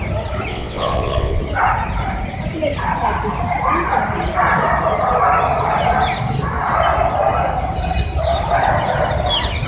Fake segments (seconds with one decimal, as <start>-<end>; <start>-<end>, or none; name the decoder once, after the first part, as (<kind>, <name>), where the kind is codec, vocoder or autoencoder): 0.5-1.4 (vocoder, WaveNeXt)